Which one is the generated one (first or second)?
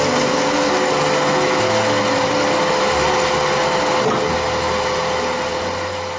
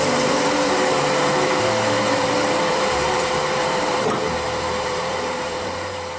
second